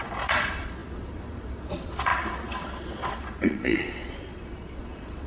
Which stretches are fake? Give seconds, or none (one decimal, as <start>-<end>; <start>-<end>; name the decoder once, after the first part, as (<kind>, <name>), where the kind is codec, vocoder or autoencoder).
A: 0.0-5.3 (vocoder, Vocos)